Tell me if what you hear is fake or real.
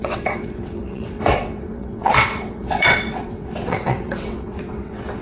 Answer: fake